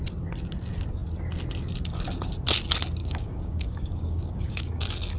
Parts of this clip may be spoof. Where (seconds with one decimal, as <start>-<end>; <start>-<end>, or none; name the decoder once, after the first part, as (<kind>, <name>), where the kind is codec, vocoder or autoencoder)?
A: 3.0-4.8 (codec, DAC)